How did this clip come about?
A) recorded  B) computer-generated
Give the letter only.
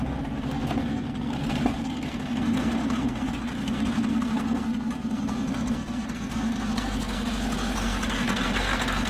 B